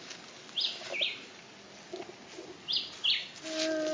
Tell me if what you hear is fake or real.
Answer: real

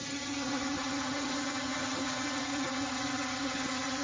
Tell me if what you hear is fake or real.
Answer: fake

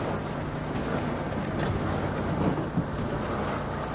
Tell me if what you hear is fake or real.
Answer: real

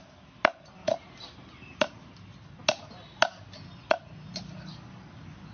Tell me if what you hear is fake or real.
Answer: real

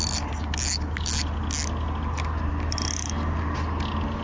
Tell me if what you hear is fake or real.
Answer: real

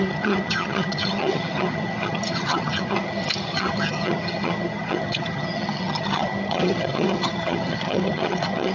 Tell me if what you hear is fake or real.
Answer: fake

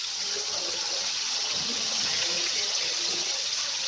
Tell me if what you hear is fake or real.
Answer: fake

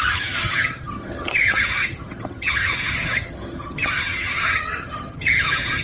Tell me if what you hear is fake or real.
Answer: fake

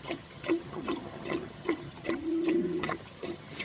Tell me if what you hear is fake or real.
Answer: fake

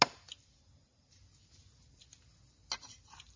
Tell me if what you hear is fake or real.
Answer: real